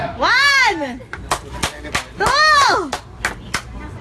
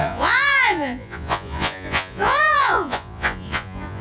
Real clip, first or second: first